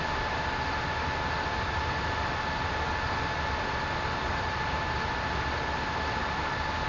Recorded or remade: recorded